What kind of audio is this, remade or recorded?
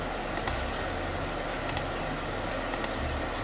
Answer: recorded